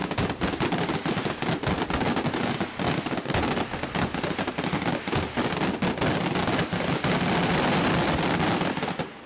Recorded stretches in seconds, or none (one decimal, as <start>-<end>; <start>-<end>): 0.0-9.3